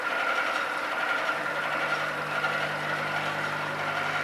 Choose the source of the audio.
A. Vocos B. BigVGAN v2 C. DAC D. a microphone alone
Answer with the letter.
D